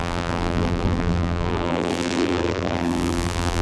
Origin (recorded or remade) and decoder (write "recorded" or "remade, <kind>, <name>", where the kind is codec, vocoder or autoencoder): remade, vocoder, BigVGAN v2